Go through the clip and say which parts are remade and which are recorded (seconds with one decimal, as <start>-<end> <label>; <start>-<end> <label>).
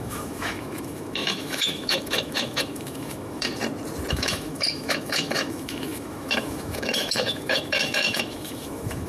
0.0-3.5 remade; 3.5-4.1 recorded; 4.1-9.1 remade